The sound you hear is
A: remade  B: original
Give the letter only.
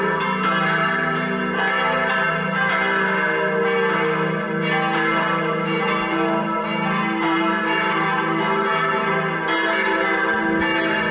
B